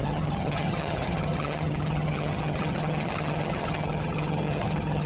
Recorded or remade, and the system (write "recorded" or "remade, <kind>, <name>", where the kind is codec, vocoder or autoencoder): remade, vocoder, HiFi-GAN